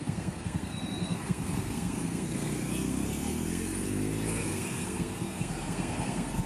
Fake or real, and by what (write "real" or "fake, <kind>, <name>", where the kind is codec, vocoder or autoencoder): fake, codec, SNAC